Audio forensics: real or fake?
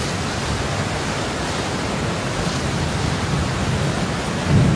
real